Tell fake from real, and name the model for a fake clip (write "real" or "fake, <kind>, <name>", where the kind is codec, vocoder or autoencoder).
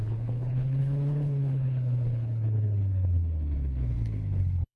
fake, codec, HILCodec